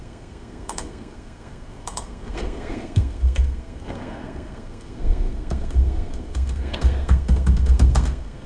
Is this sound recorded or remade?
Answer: remade